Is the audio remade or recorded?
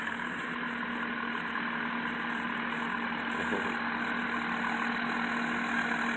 recorded